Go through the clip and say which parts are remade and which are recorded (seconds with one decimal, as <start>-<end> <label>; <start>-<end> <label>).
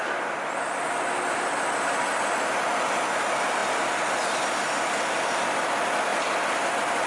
0.0-6.1 recorded; 6.1-7.1 remade